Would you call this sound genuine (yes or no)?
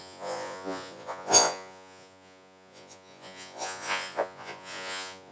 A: no